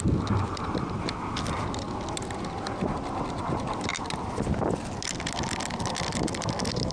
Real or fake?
real